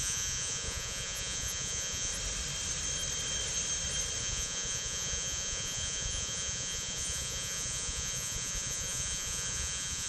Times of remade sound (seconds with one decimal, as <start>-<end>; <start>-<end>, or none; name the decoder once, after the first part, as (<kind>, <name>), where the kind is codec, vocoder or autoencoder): 0.0-2.1 (vocoder, Vocos); 4.2-10.1